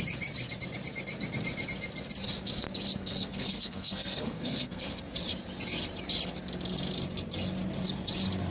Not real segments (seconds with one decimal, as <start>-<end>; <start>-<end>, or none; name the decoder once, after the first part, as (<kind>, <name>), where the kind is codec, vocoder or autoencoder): 3.0-5.0 (codec, SNAC)